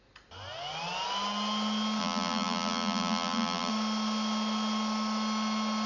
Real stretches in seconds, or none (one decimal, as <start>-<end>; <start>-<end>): 0.0-2.0; 3.7-5.9